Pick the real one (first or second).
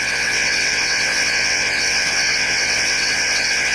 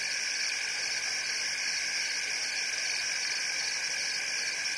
second